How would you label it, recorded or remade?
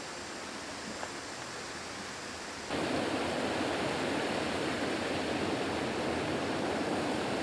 recorded